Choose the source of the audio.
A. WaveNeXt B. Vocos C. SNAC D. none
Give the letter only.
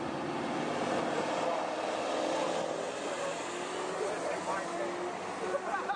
D